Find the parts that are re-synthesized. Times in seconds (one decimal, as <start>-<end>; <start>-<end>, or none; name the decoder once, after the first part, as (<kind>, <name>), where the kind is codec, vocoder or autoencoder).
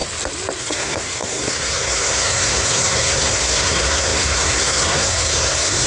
0.6-5.9 (codec, SNAC)